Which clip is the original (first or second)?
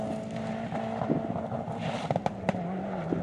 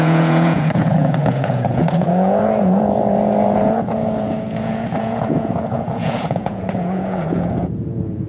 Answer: first